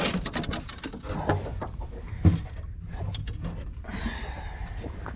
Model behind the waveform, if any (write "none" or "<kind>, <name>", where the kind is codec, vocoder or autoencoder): none